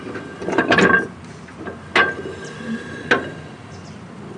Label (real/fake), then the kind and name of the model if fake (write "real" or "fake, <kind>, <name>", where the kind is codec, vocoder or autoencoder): real